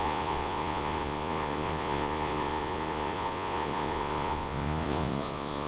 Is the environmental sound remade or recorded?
remade